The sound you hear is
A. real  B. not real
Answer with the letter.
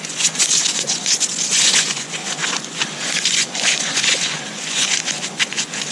B